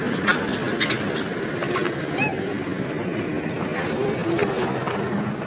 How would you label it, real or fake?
real